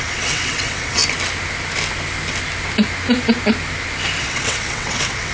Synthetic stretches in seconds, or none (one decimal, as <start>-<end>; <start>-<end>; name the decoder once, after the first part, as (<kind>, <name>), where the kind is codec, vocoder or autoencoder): 0.0-1.0 (vocoder, WaveNeXt); 4.2-5.3